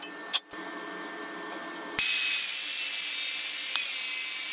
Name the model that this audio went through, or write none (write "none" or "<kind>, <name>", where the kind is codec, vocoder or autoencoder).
none